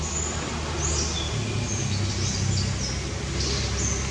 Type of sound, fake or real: real